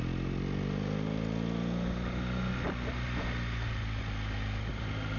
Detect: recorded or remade recorded